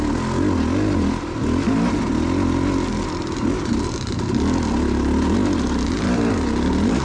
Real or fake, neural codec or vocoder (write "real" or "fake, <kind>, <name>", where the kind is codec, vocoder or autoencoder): real